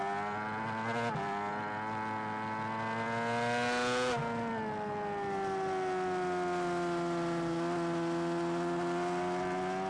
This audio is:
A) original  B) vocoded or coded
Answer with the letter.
A